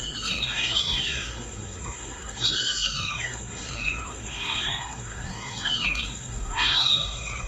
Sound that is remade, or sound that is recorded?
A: remade